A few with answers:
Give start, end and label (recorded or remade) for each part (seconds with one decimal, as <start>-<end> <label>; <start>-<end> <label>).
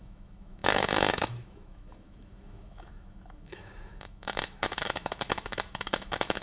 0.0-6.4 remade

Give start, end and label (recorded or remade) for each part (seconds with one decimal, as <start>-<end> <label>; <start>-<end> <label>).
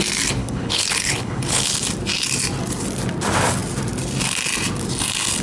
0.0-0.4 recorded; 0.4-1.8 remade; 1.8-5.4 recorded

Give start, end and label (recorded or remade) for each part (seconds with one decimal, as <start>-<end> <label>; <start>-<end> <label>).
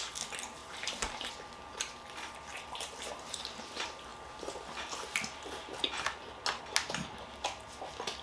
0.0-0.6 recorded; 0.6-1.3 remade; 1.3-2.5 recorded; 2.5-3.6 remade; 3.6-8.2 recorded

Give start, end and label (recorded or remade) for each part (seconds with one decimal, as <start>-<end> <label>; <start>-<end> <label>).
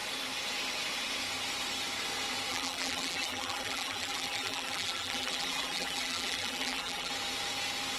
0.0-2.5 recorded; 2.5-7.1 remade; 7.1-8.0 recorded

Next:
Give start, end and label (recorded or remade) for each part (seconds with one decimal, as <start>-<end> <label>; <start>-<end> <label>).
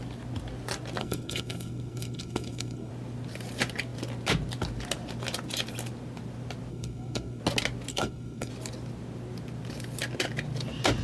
0.0-1.0 recorded; 1.0-2.9 remade; 2.9-6.7 recorded; 6.7-7.4 remade; 7.4-7.9 recorded; 7.9-8.5 remade; 8.5-11.0 recorded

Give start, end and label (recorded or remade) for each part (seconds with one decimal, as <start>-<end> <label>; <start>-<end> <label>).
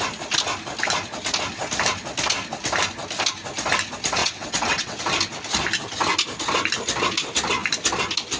0.0-4.2 recorded; 4.2-5.0 remade; 5.0-8.4 recorded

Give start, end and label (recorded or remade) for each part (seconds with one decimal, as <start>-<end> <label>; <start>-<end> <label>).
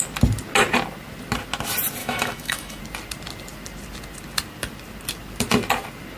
0.0-2.0 recorded; 2.0-2.8 remade; 2.8-6.2 recorded